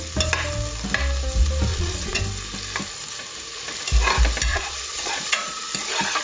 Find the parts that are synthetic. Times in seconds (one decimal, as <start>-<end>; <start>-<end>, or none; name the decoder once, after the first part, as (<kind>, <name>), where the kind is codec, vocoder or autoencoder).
1.7-2.2 (vocoder, Vocos); 4.5-5.6